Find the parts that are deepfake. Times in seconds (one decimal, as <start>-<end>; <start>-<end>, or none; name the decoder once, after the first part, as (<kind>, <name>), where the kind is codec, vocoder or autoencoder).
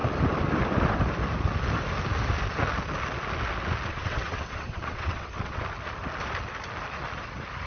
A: 3.9-5.6 (vocoder, WaveNeXt)